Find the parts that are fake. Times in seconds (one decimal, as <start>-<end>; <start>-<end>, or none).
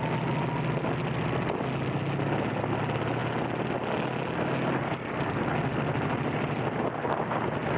none